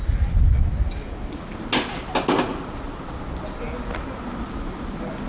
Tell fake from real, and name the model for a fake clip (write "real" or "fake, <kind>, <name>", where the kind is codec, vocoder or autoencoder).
real